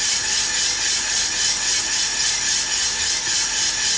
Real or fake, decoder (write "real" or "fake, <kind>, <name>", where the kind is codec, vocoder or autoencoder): real